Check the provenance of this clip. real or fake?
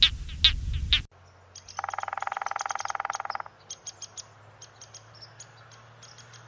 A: real